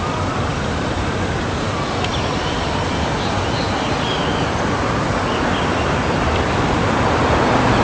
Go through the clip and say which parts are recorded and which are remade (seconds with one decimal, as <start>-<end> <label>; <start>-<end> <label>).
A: 0.0-7.8 recorded